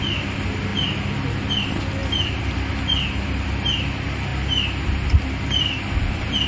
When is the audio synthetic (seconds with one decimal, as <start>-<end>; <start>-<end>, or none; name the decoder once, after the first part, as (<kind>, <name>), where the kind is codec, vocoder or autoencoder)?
0.7-1.3 (vocoder, BigVGAN v2); 2.0-3.7; 4.3-6.5